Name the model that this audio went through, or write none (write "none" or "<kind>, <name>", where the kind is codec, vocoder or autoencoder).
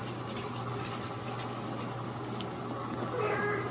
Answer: none